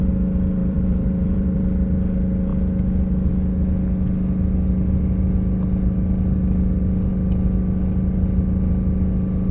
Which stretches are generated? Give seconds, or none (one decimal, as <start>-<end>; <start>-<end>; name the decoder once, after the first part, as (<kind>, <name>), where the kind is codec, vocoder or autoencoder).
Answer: 0.6-1.6 (vocoder, BigVGAN v2)